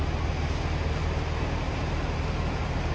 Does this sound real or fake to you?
real